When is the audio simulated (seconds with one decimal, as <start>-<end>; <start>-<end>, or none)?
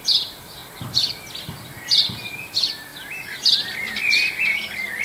0.0-0.6; 1.5-5.0